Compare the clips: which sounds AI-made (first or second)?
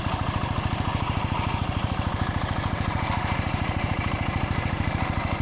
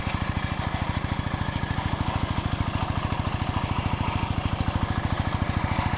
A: first